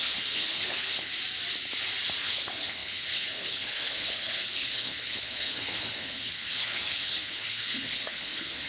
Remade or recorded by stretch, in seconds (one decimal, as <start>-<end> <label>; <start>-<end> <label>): 0.0-1.1 remade; 1.1-2.2 recorded; 2.2-8.7 remade